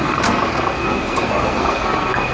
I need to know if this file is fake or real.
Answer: fake